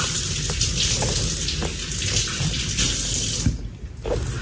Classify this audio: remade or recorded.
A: recorded